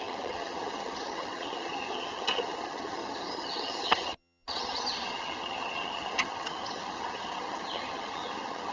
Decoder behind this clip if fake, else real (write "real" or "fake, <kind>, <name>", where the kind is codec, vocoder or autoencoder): fake, vocoder, HiFi-GAN